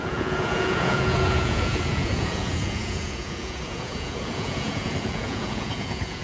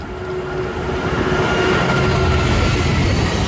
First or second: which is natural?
second